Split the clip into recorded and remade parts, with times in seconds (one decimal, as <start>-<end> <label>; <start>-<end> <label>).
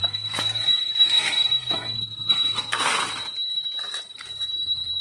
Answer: 0.0-3.0 remade; 3.0-5.0 recorded